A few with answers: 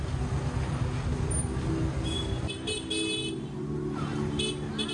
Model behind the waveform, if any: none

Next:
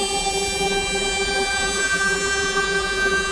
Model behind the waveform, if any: vocoder, BigVGAN v2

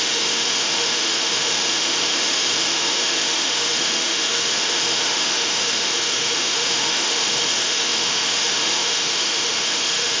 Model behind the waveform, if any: autoencoder, DAC-VAE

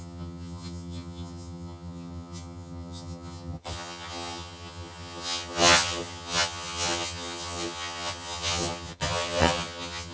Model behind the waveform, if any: vocoder, HiFi-GAN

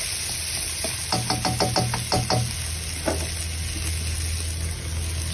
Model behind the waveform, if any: none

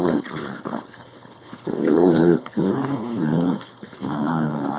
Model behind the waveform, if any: codec, HILCodec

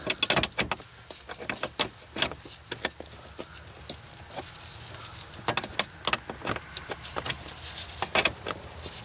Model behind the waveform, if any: none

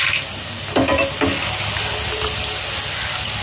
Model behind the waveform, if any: none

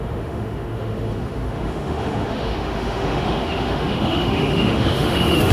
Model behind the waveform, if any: autoencoder, DAC-VAE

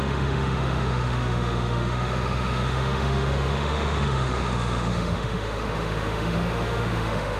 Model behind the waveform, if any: autoencoder, DAC-VAE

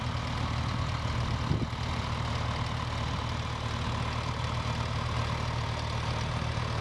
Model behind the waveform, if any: none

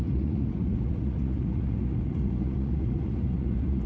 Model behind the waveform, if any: vocoder, Vocos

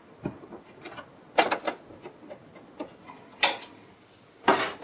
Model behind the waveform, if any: none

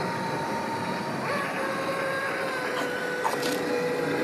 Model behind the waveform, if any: none